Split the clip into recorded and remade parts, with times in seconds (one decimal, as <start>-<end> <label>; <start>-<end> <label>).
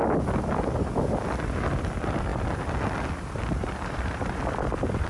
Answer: 0.0-3.6 recorded; 3.6-4.4 remade; 4.4-5.1 recorded